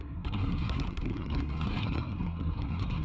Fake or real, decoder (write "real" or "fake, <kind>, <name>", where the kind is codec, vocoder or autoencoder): fake, codec, SNAC